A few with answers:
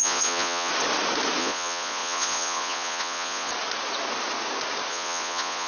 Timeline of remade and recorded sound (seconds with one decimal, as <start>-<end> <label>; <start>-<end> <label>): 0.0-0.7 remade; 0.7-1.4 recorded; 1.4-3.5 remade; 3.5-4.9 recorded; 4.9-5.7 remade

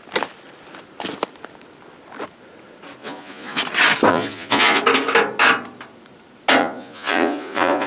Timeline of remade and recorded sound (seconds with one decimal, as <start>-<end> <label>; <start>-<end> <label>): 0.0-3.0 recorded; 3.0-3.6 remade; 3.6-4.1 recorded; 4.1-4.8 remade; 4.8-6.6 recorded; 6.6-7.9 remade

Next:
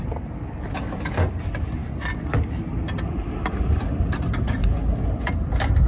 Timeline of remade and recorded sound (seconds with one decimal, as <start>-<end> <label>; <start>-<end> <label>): 0.0-5.9 recorded

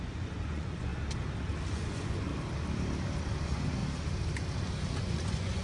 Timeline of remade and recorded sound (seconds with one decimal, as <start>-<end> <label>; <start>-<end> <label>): 0.0-0.9 remade; 0.9-1.7 recorded; 1.7-2.3 remade; 2.3-3.4 recorded; 3.4-3.8 remade; 3.8-5.0 recorded; 5.0-5.6 remade

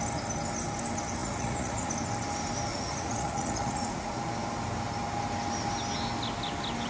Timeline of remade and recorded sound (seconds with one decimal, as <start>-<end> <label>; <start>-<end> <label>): 0.0-1.2 recorded; 1.2-1.9 remade; 1.9-2.7 recorded; 2.7-4.1 remade; 4.1-6.9 recorded

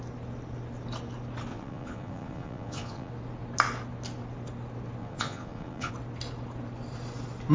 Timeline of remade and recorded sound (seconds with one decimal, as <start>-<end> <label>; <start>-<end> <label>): 0.0-1.5 recorded; 1.5-3.1 remade; 3.1-5.0 recorded; 5.0-5.9 remade; 5.9-7.5 recorded

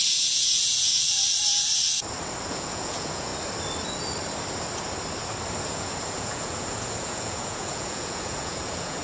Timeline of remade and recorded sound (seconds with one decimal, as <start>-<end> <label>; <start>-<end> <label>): 0.0-0.9 remade; 0.9-2.5 recorded; 2.5-3.3 remade; 3.3-5.6 recorded; 5.6-9.0 remade